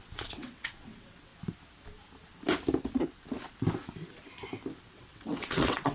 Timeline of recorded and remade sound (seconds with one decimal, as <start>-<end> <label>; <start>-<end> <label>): 0.0-1.3 remade; 1.3-4.8 recorded; 4.8-5.9 remade